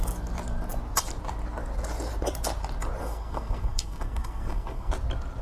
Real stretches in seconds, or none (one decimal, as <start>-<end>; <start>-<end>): 0.0-3.0; 4.9-5.4